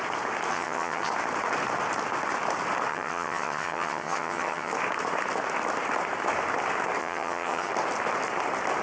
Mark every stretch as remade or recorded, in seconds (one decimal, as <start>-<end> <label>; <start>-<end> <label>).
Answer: 0.0-0.5 recorded; 0.5-1.1 remade; 1.1-2.9 recorded; 2.9-4.7 remade; 4.7-7.0 recorded; 7.0-7.7 remade; 7.7-8.8 recorded